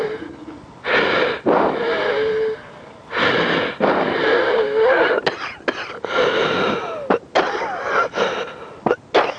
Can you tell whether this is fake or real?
real